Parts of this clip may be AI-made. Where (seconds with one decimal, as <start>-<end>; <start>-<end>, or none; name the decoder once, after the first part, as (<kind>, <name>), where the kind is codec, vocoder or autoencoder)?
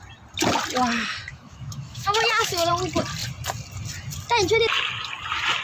1.3-2.7 (autoencoder, DAC-VAE)